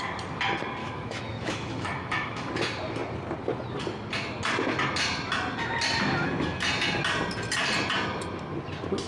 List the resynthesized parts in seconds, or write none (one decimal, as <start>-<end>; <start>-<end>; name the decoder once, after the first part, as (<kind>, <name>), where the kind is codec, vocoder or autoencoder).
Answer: 0.8-2.5 (autoencoder, DAC-VAE)